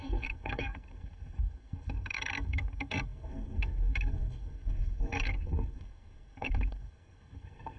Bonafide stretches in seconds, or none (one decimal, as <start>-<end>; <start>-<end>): none